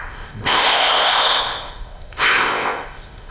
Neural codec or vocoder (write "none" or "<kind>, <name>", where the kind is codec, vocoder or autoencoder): codec, ZipCodec